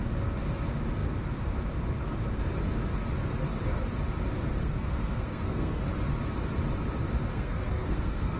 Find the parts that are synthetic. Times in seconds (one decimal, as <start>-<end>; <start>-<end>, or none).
4.5-5.8; 7.3-8.4